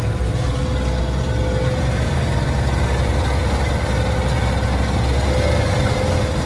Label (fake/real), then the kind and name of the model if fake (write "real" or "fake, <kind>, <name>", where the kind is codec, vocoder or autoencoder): real